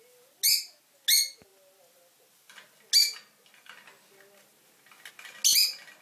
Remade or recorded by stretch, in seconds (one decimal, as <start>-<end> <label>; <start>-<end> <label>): 0.0-6.0 recorded

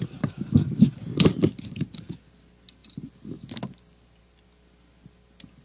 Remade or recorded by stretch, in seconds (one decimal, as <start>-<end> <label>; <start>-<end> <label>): 0.0-5.6 recorded

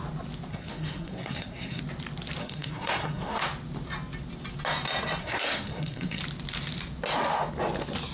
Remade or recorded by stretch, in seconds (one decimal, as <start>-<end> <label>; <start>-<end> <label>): 0.0-0.5 recorded; 0.5-1.8 remade; 1.8-2.4 recorded; 2.4-3.4 remade; 3.4-5.2 recorded; 5.2-6.2 remade; 6.2-8.1 recorded

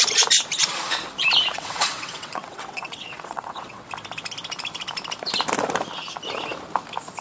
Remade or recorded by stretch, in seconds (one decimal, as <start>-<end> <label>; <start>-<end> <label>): 0.0-1.5 recorded; 1.5-3.9 remade; 3.9-7.2 recorded

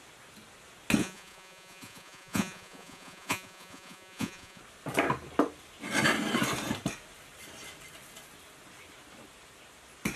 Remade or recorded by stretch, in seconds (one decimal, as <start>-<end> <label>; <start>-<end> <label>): 0.0-1.0 recorded; 1.0-4.6 remade; 4.6-10.2 recorded

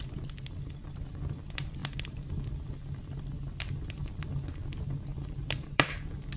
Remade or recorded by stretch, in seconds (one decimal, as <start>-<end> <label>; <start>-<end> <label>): 0.0-5.1 recorded; 5.1-5.9 remade; 5.9-6.4 recorded